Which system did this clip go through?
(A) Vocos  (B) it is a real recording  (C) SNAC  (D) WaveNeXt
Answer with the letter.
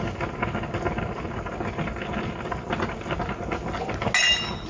B